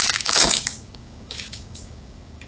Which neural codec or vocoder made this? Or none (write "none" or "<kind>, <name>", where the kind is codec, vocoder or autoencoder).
codec, DAC